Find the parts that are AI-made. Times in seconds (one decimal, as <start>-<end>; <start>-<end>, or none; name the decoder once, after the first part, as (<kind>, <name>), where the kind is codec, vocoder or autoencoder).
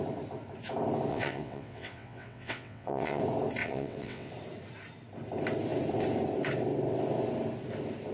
1.1-3.2 (vocoder, WaveNeXt); 3.6-4.3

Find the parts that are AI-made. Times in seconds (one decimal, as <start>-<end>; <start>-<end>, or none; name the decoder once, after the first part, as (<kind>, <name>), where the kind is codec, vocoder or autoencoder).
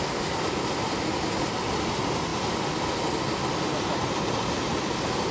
none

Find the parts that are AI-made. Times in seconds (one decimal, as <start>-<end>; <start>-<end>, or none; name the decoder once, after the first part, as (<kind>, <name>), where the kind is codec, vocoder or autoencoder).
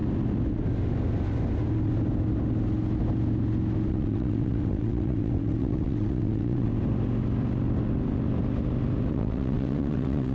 3.9-6.7 (vocoder, WaveNeXt); 9.1-10.3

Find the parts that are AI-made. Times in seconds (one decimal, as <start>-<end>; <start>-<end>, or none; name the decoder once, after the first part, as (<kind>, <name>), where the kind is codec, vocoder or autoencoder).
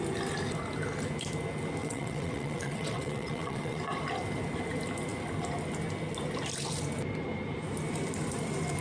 1.8-3.8 (vocoder, WaveNeXt)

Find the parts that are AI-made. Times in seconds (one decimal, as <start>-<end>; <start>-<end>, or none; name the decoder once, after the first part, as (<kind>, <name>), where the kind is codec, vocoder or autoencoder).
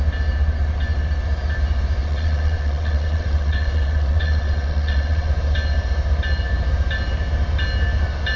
2.0-5.3 (vocoder, WaveNeXt)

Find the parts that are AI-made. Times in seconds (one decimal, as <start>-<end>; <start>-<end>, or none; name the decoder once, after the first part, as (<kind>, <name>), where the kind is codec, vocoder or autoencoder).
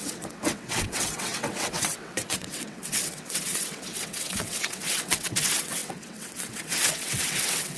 0.0-7.8 (vocoder, WaveNeXt)